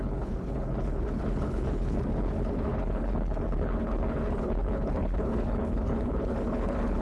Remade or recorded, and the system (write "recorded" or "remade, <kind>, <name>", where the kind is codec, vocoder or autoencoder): remade, codec, HILCodec